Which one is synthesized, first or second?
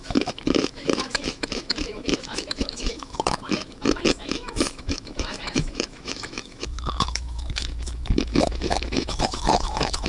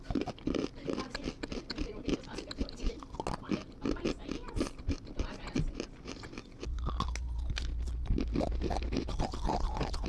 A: first